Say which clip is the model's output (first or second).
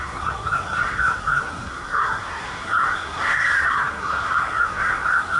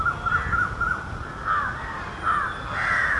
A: first